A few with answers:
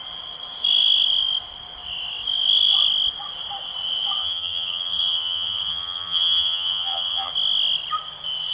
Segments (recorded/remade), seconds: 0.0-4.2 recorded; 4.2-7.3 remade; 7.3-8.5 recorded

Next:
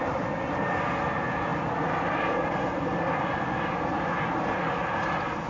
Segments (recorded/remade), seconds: 0.0-5.5 recorded

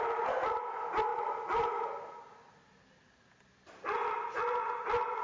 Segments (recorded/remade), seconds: 0.0-5.2 recorded

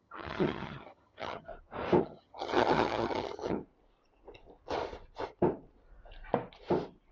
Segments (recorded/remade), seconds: 0.0-1.5 remade; 1.5-2.0 recorded; 2.0-3.6 remade; 3.6-7.1 recorded

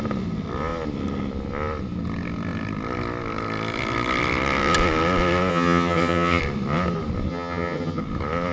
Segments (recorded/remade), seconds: 0.0-5.5 recorded; 5.5-6.4 remade; 6.4-7.3 recorded; 7.3-8.0 remade; 8.0-8.5 recorded